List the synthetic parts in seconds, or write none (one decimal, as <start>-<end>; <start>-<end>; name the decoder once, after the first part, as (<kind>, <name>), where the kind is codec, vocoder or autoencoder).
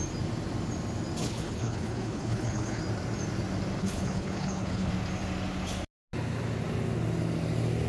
1.2-2.8 (codec, HILCodec); 3.8-4.9